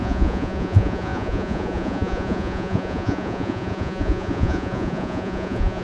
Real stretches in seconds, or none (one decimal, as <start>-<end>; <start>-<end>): none